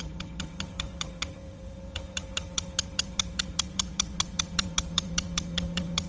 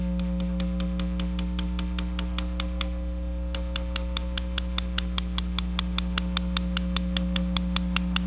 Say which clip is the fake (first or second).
first